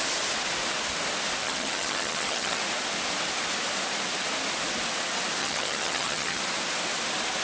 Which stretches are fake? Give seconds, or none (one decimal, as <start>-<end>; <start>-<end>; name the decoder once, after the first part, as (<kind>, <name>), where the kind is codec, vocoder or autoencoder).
1.4-2.6 (vocoder, HiFi-GAN); 5.4-6.4